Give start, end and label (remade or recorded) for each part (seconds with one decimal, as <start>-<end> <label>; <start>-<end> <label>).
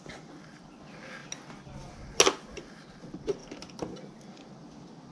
0.0-5.1 recorded